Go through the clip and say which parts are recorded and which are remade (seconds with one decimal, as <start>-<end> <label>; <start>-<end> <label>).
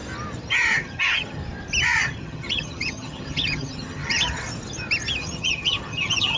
0.0-0.5 recorded; 0.5-1.4 remade; 1.4-2.0 recorded; 2.0-4.4 remade; 4.4-5.2 recorded; 5.2-6.4 remade